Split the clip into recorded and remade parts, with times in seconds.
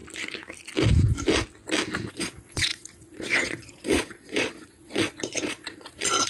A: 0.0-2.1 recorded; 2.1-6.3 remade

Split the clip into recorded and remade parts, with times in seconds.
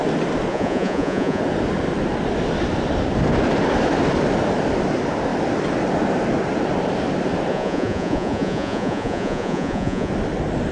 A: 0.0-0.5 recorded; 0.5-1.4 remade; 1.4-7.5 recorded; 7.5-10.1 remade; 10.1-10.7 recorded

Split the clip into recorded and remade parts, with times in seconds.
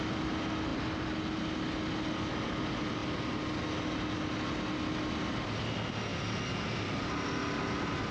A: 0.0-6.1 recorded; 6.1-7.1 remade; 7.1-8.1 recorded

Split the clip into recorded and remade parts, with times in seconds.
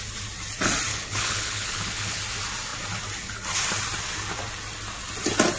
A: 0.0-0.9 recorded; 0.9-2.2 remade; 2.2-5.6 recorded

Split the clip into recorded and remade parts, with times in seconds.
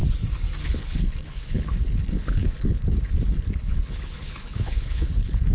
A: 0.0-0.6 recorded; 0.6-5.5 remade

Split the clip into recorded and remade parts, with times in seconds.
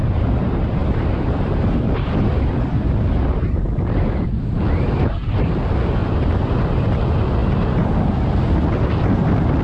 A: 0.0-0.8 recorded; 0.8-4.8 remade; 4.8-6.0 recorded; 6.0-7.0 remade; 7.0-9.6 recorded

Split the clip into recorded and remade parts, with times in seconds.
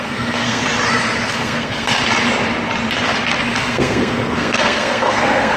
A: 0.0-0.6 remade; 0.6-1.3 recorded; 1.3-2.0 remade; 2.0-3.6 recorded; 3.6-5.6 remade